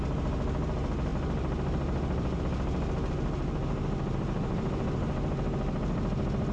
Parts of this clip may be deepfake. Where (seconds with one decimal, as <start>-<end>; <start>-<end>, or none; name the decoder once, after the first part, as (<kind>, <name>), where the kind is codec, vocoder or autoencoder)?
none